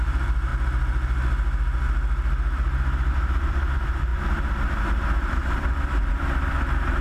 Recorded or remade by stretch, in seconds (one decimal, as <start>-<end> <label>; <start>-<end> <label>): 0.0-0.5 remade; 0.5-3.1 recorded; 3.1-7.0 remade